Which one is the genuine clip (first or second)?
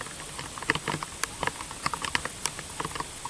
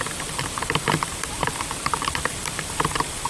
first